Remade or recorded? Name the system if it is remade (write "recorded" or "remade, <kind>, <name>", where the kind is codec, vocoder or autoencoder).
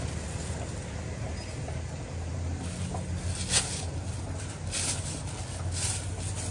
recorded